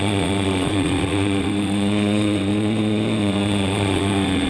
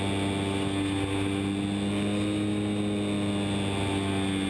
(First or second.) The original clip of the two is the second